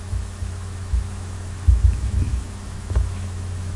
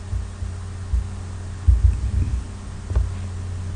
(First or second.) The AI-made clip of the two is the first